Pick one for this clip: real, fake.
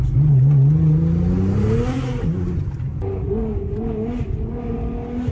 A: real